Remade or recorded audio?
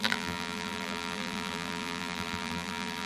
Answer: remade